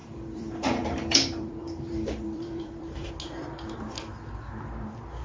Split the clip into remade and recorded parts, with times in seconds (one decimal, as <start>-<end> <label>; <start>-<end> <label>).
0.0-3.1 remade; 3.1-5.2 recorded